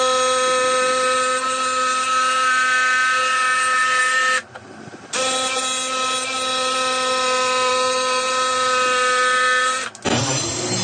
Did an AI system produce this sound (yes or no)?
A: no